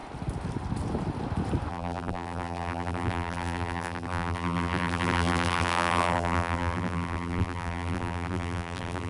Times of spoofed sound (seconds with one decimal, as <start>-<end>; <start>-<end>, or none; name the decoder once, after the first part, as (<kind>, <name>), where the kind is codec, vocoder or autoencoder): 1.7-9.1 (vocoder, BigVGAN v2)